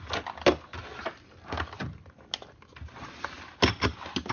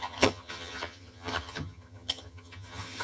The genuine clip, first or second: first